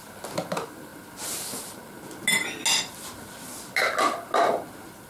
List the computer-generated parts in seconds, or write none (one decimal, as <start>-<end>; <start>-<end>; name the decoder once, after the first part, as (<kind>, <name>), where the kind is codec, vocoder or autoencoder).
none